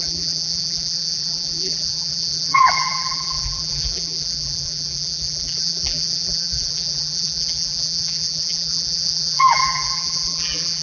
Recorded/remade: remade